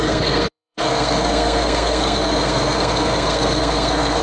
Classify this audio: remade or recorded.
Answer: remade